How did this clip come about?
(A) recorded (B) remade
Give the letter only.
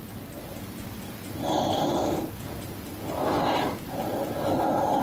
A